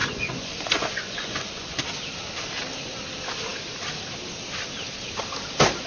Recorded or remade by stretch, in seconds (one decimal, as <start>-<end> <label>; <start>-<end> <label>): 0.0-1.8 remade; 1.8-5.9 recorded

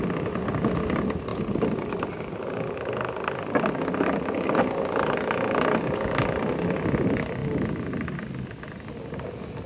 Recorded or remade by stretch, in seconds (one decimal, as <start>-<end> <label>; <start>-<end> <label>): 0.0-9.7 recorded

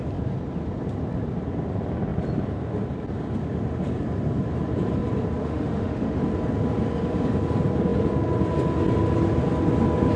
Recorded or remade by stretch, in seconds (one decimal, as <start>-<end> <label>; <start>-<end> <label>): 0.0-5.4 recorded; 5.4-6.2 remade; 6.2-10.2 recorded

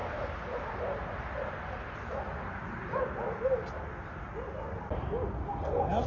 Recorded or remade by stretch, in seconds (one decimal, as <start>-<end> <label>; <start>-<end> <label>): 0.0-6.1 recorded

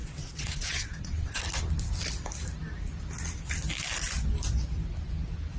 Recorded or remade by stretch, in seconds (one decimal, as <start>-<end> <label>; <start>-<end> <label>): 0.0-1.4 remade; 1.4-5.6 recorded

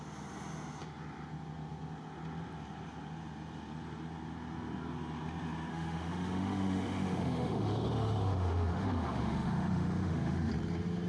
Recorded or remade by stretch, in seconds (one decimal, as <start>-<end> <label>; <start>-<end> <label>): 0.0-5.7 recorded; 5.7-10.5 remade; 10.5-11.1 recorded

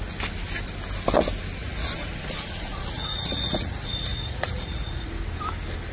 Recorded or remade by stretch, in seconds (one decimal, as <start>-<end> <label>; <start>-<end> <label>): 0.0-1.6 recorded; 1.6-5.1 remade; 5.1-5.9 recorded